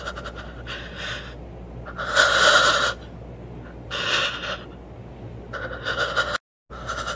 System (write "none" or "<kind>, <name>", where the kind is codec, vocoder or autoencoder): none